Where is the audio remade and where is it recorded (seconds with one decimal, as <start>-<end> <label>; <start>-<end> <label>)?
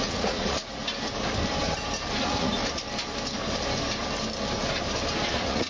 0.0-0.8 remade; 0.8-2.2 recorded; 2.2-2.6 remade; 2.6-5.3 recorded; 5.3-5.7 remade